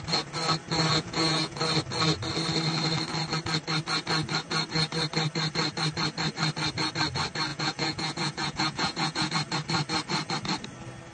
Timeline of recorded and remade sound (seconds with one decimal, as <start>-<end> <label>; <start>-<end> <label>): 0.0-0.9 recorded; 0.9-1.6 remade; 1.6-7.5 recorded; 7.5-9.3 remade; 9.3-11.1 recorded